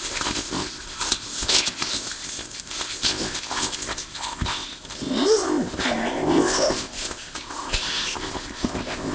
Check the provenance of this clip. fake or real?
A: fake